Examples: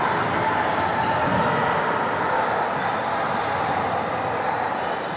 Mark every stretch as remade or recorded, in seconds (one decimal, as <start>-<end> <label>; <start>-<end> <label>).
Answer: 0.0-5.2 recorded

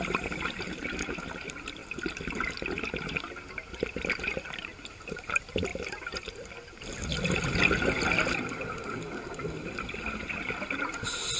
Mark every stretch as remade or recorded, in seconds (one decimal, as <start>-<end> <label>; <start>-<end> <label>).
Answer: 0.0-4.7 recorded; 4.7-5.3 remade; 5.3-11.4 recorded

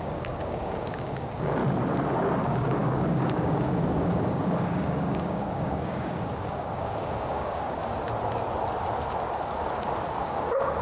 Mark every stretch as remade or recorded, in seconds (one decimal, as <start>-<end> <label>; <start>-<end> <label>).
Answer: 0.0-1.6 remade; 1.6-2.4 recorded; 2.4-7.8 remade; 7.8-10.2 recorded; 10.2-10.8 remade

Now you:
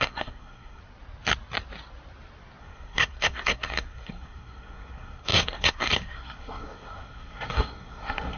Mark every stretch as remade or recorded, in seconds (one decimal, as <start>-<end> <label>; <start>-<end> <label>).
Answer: 0.0-0.8 remade; 0.8-2.6 recorded; 2.6-8.4 remade

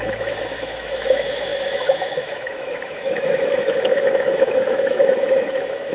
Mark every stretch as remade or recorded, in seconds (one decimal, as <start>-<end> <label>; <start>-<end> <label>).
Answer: 0.0-5.9 remade

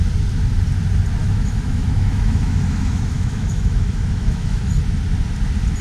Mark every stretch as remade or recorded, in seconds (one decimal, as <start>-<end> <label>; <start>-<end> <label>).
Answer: 0.0-1.2 recorded; 1.2-4.7 remade; 4.7-5.8 recorded